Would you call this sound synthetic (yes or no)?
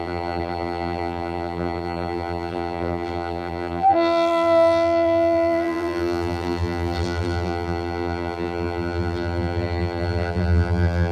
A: yes